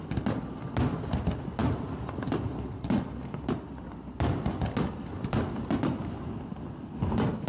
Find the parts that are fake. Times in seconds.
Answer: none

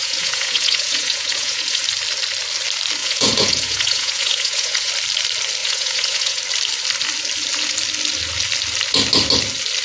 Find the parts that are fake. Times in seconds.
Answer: 0.0-1.8; 3.0-4.9; 5.6-6.4

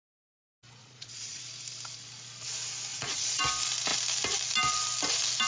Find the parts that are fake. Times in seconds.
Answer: 0.8-1.4; 2.9-3.4

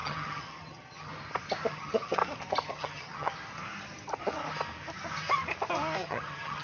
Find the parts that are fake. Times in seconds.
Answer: 0.0-1.1; 1.7-2.2; 2.7-3.3; 6.0-6.6

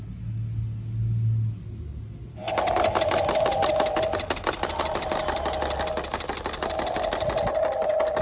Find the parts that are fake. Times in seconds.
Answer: none

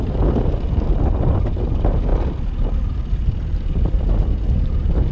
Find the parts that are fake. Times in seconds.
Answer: none